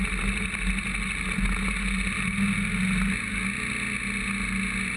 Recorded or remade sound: recorded